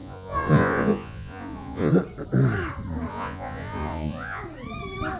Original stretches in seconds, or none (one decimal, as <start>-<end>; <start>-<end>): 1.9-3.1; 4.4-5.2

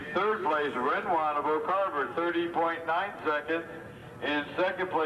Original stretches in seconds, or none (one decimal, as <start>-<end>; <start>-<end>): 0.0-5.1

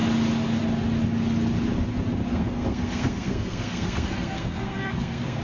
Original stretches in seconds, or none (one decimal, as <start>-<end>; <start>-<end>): 0.0-2.3

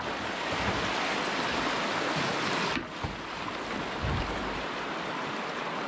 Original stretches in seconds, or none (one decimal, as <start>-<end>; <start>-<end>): 0.0-4.4; 4.9-5.9

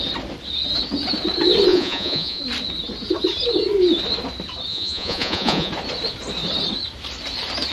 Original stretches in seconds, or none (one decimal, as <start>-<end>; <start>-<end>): 0.0-1.7; 2.4-4.7; 5.7-7.7

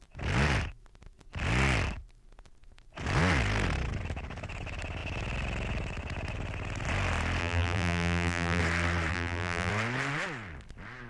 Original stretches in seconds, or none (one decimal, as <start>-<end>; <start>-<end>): 0.0-7.4; 8.6-9.1; 9.7-11.1

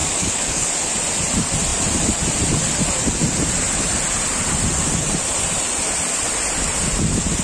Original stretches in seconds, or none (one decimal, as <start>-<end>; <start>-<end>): 0.7-7.4